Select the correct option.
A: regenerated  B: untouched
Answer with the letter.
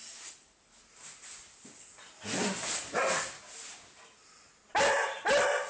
B